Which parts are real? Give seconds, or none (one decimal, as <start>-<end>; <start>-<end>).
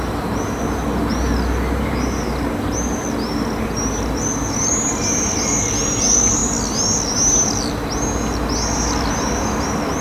0.0-10.0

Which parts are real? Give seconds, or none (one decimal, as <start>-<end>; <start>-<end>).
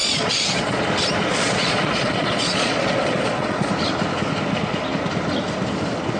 0.8-1.3; 3.7-6.2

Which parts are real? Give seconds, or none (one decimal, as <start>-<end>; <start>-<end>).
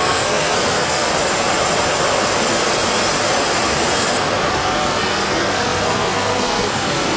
1.1-4.5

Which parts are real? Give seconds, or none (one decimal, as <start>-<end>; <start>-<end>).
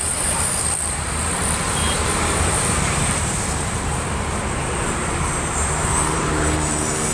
none